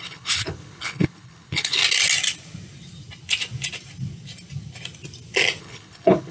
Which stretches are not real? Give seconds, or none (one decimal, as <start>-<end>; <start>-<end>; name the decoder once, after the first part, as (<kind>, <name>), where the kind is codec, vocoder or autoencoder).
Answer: 0.0-1.8 (codec, HILCodec); 5.6-6.3